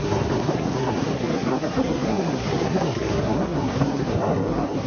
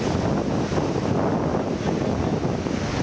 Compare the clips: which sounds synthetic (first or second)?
first